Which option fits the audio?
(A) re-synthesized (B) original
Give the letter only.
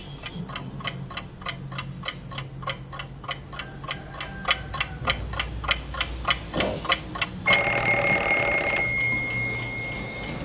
B